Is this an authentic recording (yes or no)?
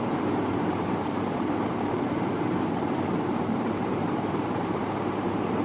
no